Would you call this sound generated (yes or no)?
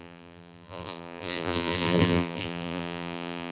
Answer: yes